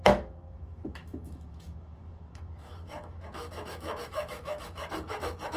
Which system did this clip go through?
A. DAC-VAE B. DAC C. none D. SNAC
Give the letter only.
A